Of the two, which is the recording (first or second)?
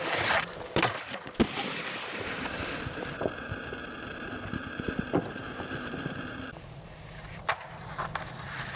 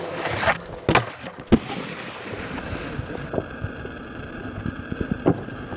second